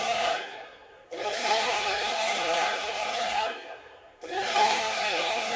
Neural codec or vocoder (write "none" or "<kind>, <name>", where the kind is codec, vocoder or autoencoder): codec, SNAC